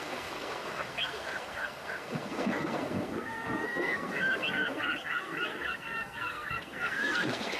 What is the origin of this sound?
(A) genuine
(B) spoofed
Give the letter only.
B